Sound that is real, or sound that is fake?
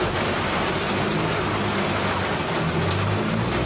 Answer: real